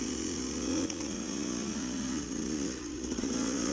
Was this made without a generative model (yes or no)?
no